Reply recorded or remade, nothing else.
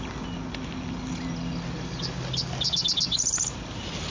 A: recorded